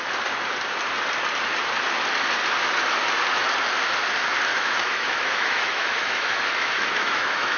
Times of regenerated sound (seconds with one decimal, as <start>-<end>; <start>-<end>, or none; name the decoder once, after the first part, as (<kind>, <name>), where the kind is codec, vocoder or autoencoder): 4.5-7.6 (autoencoder, DAC-VAE)